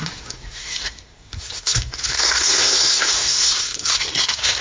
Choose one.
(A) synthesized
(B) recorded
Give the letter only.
A